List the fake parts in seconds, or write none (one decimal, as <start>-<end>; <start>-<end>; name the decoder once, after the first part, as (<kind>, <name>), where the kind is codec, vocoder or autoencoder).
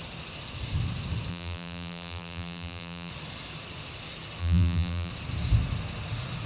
1.3-3.1 (vocoder, BigVGAN v2); 4.4-5.1